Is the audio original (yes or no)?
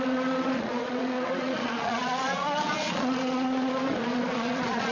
no